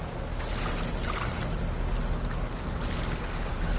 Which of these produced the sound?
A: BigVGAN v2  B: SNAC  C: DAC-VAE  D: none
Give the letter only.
D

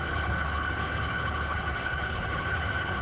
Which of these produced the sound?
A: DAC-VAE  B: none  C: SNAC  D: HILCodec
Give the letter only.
D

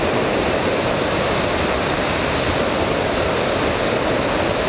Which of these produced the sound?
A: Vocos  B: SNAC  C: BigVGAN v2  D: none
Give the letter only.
D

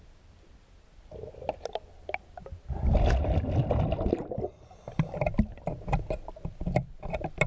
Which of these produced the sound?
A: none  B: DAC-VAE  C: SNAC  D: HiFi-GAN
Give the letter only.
A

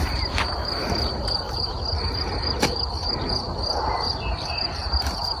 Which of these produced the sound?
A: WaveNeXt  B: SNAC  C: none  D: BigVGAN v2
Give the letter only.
D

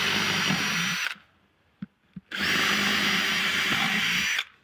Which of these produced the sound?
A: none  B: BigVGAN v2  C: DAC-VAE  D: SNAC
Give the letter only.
A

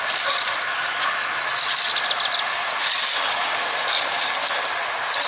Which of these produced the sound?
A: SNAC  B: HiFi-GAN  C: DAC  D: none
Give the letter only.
D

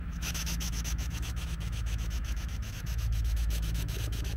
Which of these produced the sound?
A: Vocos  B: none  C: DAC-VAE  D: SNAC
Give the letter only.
C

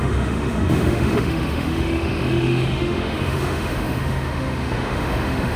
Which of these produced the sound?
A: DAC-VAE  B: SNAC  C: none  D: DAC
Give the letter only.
A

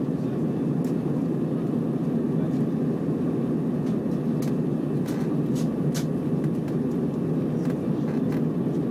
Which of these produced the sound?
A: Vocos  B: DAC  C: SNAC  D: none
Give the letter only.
D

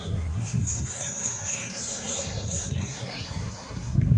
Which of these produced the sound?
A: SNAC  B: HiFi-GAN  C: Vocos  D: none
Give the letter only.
A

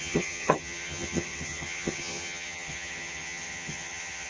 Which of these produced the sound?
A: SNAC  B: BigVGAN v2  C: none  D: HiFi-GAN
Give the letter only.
D